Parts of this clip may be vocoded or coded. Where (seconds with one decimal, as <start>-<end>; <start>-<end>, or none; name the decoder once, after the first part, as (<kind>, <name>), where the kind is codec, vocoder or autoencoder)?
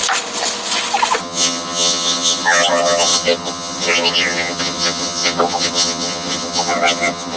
1.2-7.4 (vocoder, HiFi-GAN)